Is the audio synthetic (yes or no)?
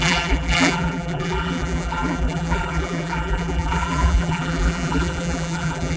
yes